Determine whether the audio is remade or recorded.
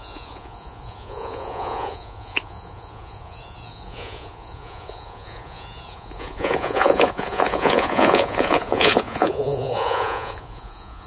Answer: remade